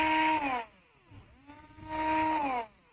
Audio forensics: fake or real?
real